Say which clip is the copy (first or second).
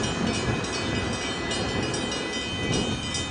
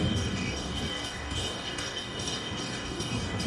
second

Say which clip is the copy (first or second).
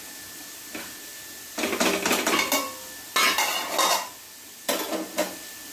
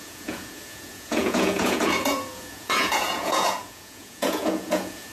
second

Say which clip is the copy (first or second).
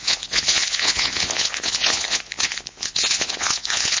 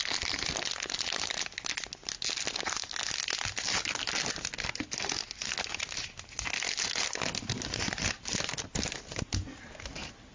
first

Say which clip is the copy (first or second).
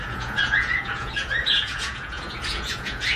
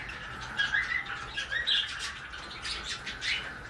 first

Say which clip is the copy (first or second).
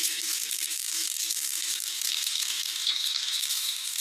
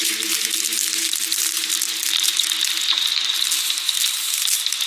first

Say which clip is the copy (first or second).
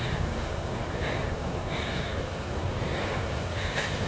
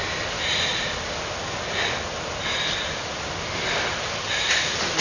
first